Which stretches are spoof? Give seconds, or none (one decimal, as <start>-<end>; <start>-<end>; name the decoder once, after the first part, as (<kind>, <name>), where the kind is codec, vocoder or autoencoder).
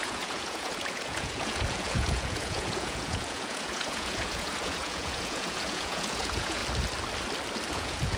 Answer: 0.0-6.6 (vocoder, Vocos); 7.7-8.2